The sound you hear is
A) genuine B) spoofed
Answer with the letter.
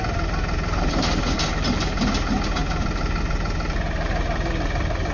A